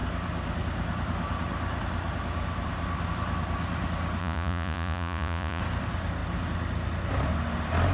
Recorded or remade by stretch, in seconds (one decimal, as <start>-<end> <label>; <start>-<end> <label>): 0.0-4.2 recorded; 4.2-5.6 remade; 5.6-7.9 recorded